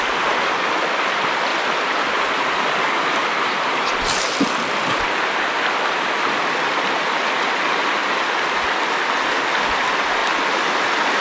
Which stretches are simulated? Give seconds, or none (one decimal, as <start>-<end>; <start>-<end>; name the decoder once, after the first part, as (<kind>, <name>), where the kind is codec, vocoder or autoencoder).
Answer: 0.0-1.5 (vocoder, BigVGAN v2); 5.6-8.0; 9.2-10.2